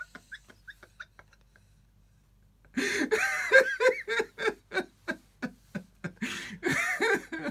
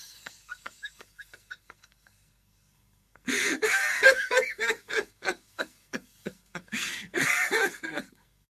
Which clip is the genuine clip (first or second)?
first